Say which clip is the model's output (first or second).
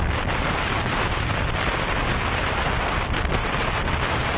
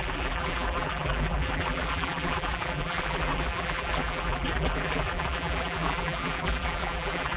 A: second